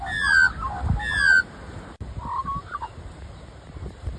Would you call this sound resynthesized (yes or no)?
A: no